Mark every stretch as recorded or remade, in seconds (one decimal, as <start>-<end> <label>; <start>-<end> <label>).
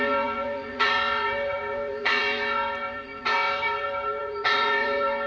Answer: 0.0-5.3 remade